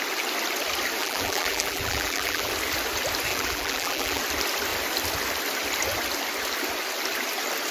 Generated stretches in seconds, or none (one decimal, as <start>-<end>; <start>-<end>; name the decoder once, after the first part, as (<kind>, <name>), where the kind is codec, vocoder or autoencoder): 1.0-2.5 (vocoder, BigVGAN v2); 3.3-4.2